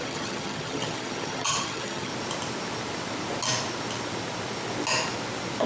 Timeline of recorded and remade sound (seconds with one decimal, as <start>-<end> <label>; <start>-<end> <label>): 0.0-2.1 remade; 2.1-5.7 recorded